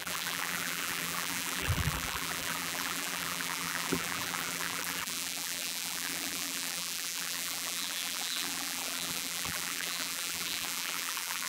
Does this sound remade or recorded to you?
remade